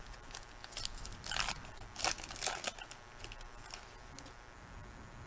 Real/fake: real